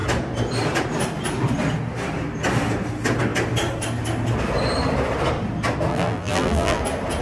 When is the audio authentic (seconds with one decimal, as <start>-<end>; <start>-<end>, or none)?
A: 0.0-5.9; 6.8-7.2